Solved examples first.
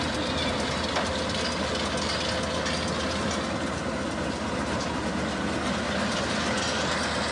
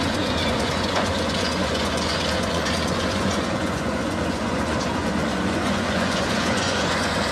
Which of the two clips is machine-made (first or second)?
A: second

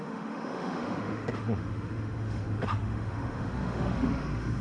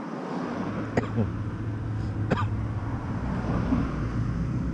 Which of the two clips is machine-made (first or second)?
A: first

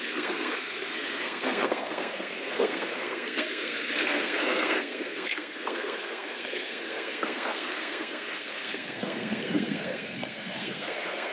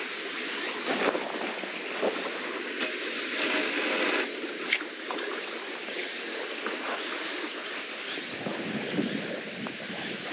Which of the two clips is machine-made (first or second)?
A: first